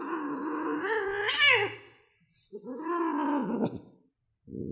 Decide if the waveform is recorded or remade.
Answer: recorded